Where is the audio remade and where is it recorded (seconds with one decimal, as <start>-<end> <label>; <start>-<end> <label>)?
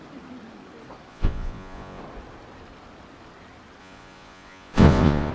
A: 0.0-1.1 recorded; 1.1-2.0 remade; 2.0-3.8 recorded; 3.8-5.3 remade